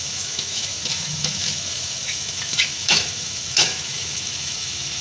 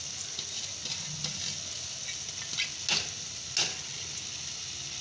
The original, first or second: second